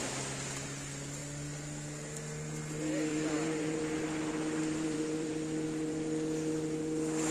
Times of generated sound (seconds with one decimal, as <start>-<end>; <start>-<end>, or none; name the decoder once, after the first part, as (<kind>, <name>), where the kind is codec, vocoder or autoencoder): 3.1-3.8 (vocoder, BigVGAN v2); 4.6-5.3